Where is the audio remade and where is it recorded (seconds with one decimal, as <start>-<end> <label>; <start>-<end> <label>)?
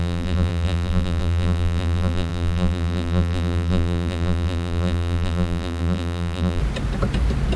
0.0-6.6 remade; 6.6-7.6 recorded